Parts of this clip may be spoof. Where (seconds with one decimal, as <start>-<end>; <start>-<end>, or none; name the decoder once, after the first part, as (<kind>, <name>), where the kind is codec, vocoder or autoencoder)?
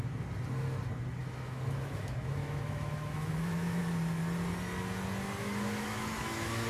1.2-3.8 (autoencoder, DAC-VAE); 5.4-6.7